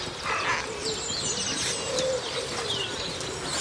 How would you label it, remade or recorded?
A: recorded